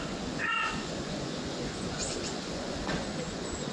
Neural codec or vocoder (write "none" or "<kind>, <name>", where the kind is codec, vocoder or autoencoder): vocoder, Vocos